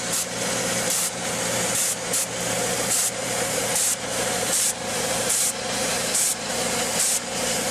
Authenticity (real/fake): fake